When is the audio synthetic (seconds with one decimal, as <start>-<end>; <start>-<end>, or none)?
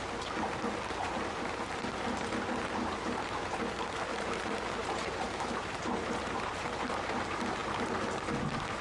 4.8-6.9